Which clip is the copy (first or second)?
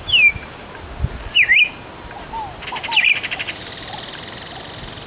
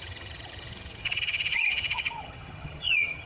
second